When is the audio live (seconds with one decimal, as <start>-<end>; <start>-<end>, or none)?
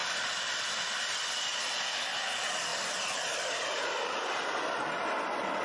0.7-2.7; 4.8-5.6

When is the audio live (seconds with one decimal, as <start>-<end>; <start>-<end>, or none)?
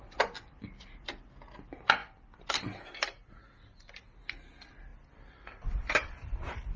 0.0-6.8